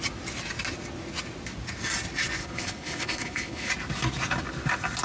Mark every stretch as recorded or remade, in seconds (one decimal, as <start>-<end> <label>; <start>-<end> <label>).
0.0-2.4 recorded; 2.4-3.7 remade; 3.7-5.0 recorded

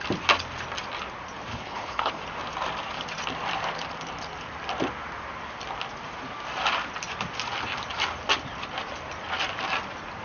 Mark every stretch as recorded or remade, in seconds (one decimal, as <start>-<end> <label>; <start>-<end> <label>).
0.0-1.5 recorded; 1.5-2.1 remade; 2.1-10.2 recorded

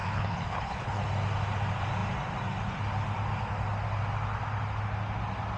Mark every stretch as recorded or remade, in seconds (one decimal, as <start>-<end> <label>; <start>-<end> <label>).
0.0-1.0 remade; 1.0-5.6 recorded

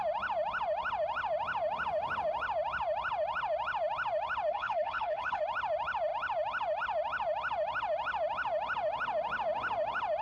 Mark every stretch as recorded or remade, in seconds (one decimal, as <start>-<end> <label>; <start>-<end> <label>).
0.0-4.5 recorded; 4.5-5.4 remade; 5.4-10.2 recorded

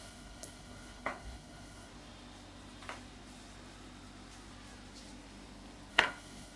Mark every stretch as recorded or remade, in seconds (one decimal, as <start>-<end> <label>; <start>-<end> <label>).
0.0-1.9 remade; 1.9-5.9 recorded; 5.9-6.6 remade

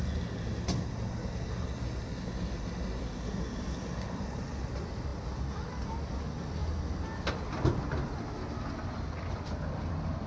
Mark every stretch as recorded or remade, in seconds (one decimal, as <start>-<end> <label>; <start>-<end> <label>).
0.0-10.3 recorded